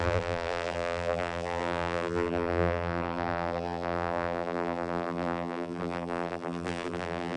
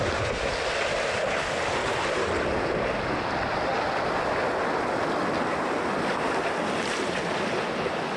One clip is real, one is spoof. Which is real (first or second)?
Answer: second